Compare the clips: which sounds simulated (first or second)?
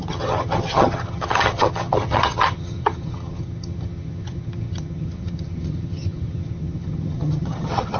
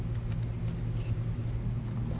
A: first